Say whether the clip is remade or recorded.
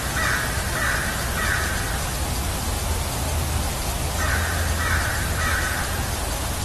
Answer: remade